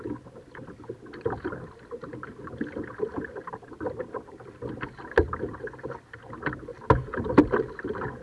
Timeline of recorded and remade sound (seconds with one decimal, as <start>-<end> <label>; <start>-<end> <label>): 0.0-8.2 recorded